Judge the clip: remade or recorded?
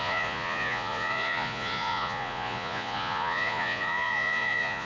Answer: remade